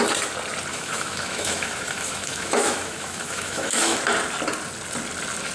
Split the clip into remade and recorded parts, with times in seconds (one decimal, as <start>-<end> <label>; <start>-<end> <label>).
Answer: 0.0-0.7 recorded; 0.7-4.0 remade; 4.0-5.5 recorded